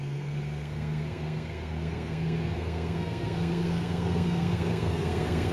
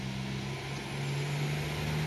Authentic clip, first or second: second